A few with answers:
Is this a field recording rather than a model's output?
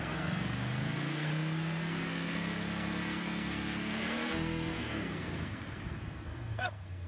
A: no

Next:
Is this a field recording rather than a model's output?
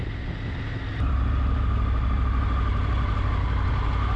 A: yes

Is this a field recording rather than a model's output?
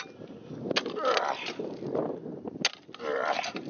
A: yes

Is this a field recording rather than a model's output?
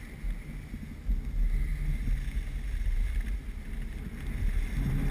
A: yes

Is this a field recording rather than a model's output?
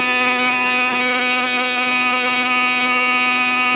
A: no